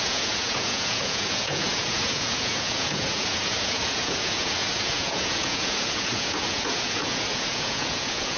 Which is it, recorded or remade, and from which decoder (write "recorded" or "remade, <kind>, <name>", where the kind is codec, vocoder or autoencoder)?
remade, vocoder, Vocos